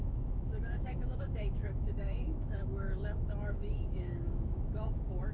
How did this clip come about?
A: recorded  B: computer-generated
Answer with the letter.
B